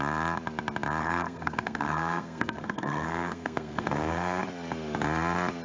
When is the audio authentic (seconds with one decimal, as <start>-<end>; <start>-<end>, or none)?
0.0-1.0; 4.4-5.6